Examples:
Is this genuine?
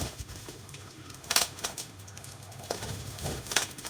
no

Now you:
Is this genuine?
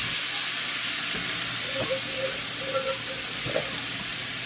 yes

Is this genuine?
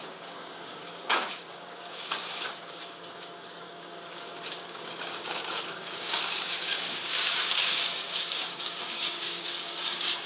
no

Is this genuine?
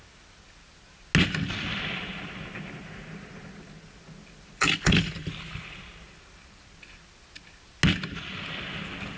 yes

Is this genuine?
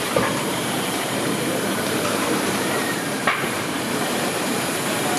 no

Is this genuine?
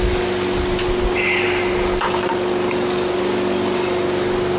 yes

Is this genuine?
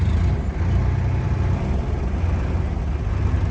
yes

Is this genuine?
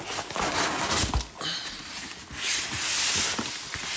yes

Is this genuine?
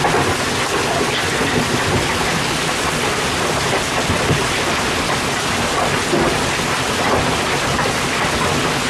yes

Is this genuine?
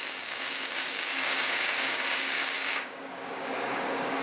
no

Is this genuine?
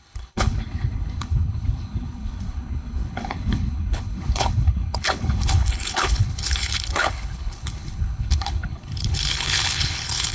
no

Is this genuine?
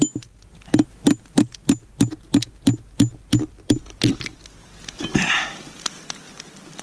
yes